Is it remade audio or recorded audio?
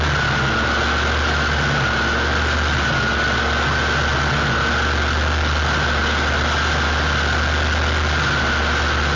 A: recorded